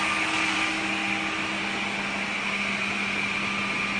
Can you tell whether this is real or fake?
real